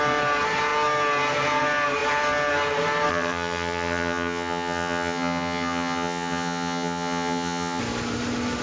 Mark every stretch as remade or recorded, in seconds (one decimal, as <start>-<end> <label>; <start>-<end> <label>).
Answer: 0.0-3.1 recorded; 3.1-7.8 remade; 7.8-8.6 recorded